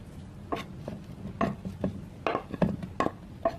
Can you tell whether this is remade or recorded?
recorded